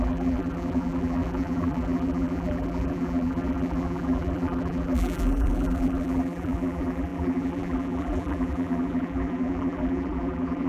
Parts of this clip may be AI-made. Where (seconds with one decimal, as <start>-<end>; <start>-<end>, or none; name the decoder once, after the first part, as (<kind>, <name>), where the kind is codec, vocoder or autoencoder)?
0.0-10.7 (vocoder, BigVGAN v2)